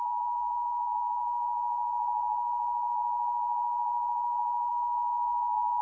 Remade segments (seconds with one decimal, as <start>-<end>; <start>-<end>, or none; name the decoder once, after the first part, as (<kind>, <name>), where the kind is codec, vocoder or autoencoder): 0.0-5.8 (autoencoder, DAC-VAE)